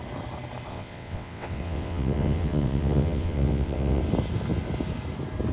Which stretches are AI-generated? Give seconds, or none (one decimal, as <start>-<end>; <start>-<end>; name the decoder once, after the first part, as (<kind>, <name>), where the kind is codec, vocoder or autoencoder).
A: 0.7-4.0 (vocoder, WaveNeXt)